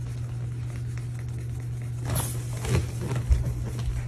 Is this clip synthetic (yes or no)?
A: no